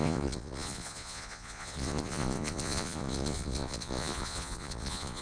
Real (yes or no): no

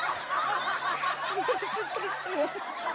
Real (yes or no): no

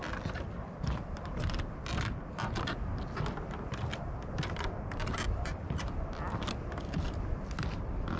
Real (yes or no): yes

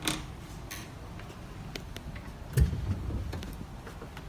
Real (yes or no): yes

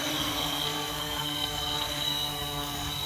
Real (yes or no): no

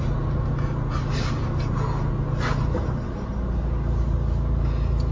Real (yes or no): yes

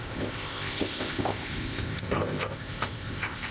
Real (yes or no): no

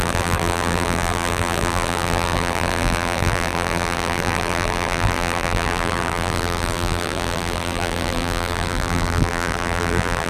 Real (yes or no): no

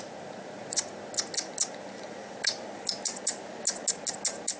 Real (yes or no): yes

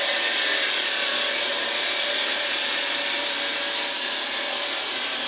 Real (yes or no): yes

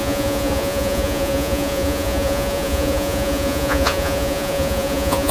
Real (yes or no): no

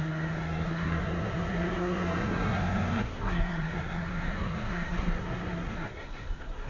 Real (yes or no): no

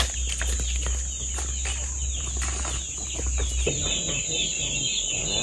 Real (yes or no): yes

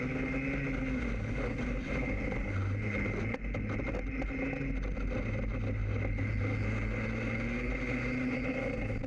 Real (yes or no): yes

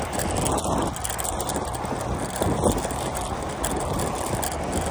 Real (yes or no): yes